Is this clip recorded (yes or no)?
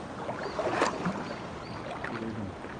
yes